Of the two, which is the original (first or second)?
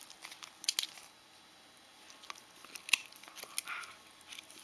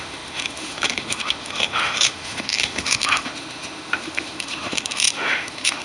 first